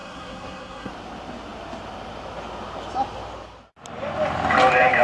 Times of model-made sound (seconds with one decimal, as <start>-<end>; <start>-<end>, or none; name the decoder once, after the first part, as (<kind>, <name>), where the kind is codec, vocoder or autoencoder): 0.0-0.9 (codec, SNAC)